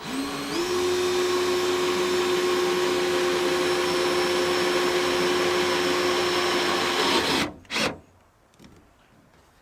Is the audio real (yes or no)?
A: yes